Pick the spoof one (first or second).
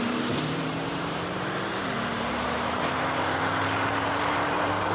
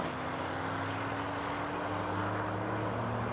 first